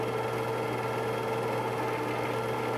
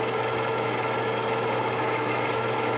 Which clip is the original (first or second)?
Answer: first